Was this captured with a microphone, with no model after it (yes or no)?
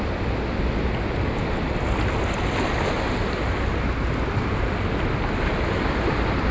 yes